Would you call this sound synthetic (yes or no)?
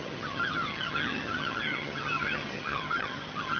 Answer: yes